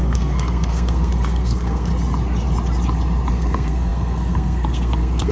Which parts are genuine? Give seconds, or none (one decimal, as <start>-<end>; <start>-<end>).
1.9-3.3

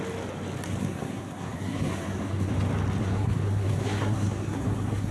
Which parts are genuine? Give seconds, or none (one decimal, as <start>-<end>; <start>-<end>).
0.0-0.8; 2.5-3.0

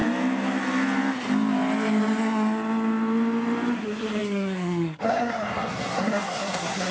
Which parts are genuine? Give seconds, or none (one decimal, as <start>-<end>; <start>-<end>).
0.0-3.7